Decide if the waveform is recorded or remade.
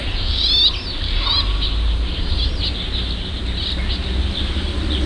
recorded